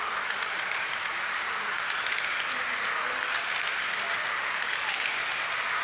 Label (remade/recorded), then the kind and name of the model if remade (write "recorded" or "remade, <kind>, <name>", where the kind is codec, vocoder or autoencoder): recorded